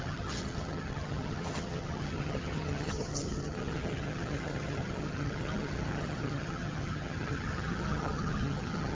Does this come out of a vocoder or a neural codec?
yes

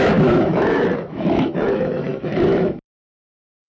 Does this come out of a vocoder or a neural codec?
yes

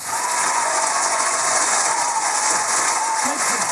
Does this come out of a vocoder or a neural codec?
yes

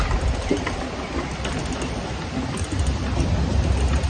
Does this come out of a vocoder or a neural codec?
no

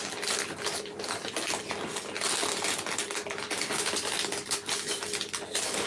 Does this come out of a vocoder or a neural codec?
no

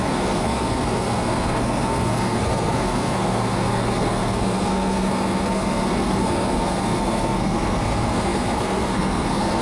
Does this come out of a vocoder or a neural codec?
yes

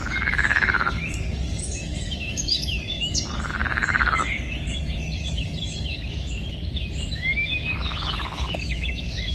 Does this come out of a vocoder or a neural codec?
yes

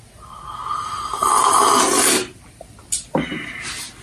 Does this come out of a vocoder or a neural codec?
no